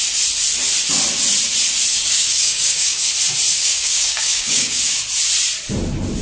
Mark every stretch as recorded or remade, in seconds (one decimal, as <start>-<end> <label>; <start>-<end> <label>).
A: 0.0-1.9 recorded; 1.9-3.1 remade; 3.1-3.5 recorded; 3.5-5.0 remade; 5.0-6.2 recorded